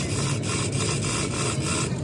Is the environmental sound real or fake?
real